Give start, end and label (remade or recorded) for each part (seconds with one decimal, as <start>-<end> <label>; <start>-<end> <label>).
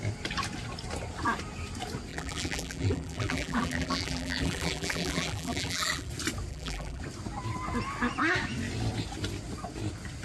0.0-2.1 recorded; 2.1-6.1 remade; 6.1-6.5 recorded; 6.5-7.0 remade; 7.0-10.2 recorded